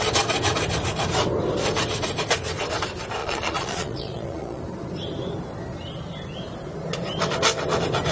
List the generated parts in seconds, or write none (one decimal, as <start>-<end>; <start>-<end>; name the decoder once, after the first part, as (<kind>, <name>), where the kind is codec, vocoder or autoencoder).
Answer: 3.2-4.6 (vocoder, Vocos)